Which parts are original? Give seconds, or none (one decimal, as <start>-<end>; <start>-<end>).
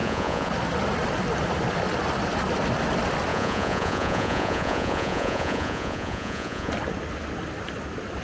0.5-3.3; 6.7-8.2